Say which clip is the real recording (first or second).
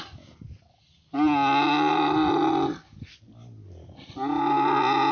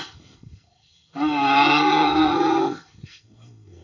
first